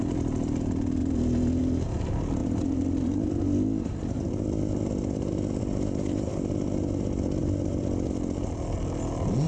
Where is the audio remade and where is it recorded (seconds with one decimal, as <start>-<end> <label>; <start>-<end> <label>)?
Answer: 0.0-9.5 recorded

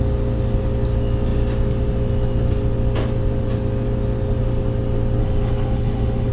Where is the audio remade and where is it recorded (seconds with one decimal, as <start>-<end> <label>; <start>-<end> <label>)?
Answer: 0.0-5.2 recorded; 5.2-6.3 remade